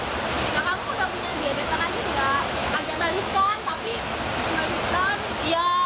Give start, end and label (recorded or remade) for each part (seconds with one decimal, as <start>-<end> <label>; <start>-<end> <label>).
0.0-1.3 recorded; 1.3-1.8 remade; 1.8-2.6 recorded; 2.6-4.0 remade; 4.0-5.9 recorded